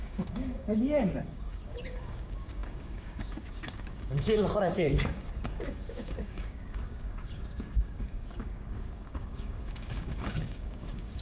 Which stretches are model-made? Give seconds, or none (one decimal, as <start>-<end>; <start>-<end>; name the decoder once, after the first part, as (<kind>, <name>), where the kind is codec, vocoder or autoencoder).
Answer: 0.0-11.2 (codec, DAC)